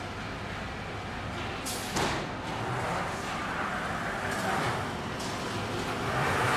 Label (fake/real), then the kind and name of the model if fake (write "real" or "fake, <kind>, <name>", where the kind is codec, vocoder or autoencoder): real